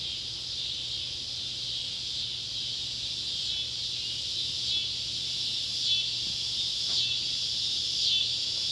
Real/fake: real